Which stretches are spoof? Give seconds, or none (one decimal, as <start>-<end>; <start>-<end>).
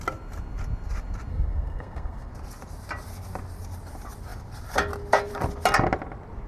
1.3-2.3